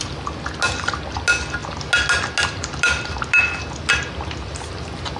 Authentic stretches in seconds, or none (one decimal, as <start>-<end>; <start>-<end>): 0.0-5.2